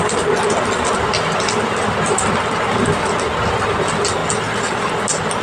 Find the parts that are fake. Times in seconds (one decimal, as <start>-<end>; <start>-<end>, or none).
none